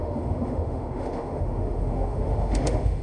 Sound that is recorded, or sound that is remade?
remade